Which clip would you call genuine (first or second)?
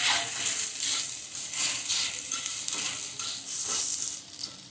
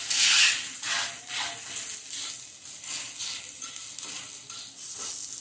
second